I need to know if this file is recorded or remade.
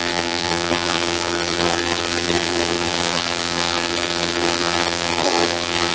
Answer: remade